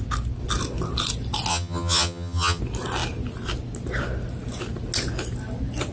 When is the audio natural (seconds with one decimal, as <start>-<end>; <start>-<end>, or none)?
0.0-1.5; 2.6-5.9

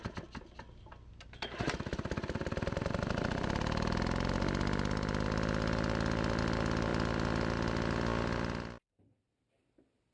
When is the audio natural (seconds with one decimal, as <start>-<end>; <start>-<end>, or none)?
0.0-10.1